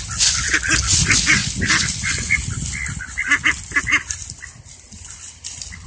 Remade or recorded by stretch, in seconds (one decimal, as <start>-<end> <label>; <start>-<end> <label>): 0.0-5.9 recorded